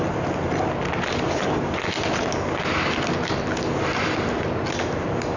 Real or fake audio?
real